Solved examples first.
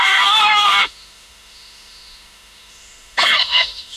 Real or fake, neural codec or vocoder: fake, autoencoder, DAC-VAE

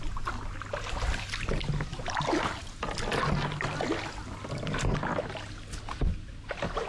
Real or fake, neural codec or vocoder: real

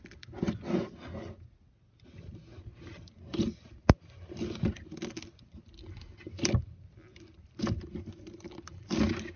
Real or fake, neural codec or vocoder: real